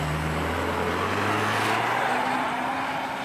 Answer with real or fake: real